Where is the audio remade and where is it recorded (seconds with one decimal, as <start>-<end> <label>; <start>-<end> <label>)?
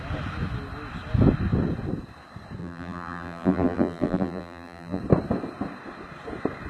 0.0-2.6 recorded; 2.6-5.0 remade; 5.0-6.7 recorded